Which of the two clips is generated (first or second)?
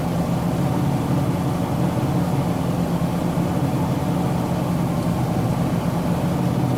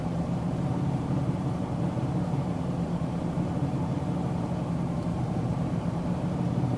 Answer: second